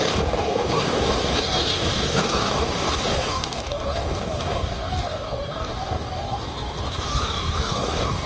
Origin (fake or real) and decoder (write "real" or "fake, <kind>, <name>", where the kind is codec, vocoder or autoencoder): fake, codec, DAC